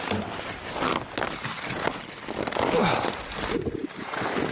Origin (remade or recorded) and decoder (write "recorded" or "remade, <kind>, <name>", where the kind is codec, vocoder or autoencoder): recorded